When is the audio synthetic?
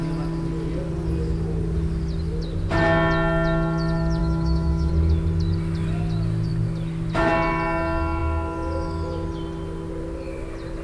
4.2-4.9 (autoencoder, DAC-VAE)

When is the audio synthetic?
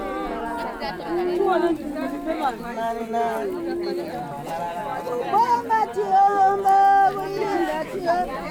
7.5-8.1 (autoencoder, DAC-VAE)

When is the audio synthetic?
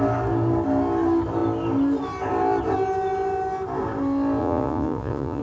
4.4-5.4 (vocoder, Vocos)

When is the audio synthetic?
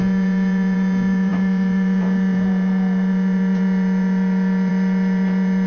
0.0-5.7 (vocoder, Vocos)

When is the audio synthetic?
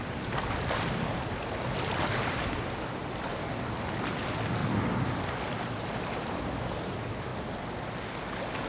none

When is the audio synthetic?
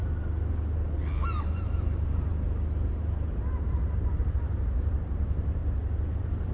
1.4-2.3 (vocoder, BigVGAN v2); 4.2-6.5